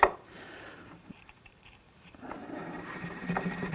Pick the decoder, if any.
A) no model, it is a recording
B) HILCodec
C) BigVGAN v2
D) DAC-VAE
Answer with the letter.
C